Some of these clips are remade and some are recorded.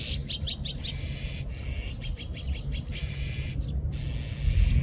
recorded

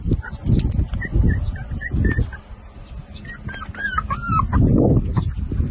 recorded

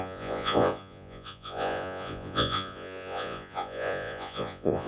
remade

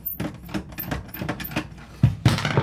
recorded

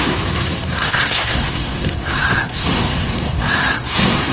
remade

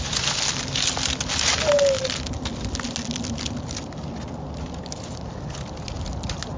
recorded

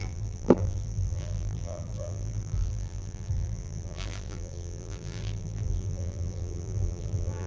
remade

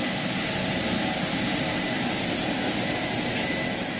recorded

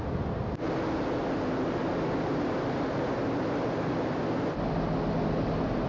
recorded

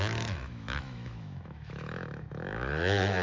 remade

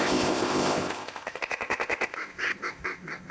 remade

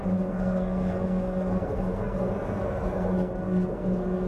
remade